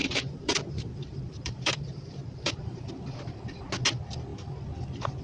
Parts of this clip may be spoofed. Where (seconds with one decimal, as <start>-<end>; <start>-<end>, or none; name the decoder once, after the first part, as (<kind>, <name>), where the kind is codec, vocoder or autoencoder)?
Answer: 0.0-2.9 (vocoder, BigVGAN v2)